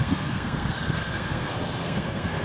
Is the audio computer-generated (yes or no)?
yes